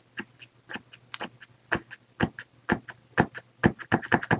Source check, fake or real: real